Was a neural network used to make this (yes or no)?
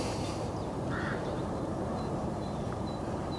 yes